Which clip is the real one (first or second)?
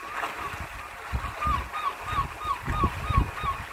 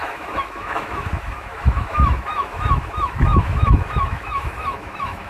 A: first